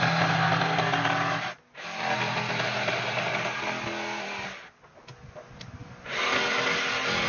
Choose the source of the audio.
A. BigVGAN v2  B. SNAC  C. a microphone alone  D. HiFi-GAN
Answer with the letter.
C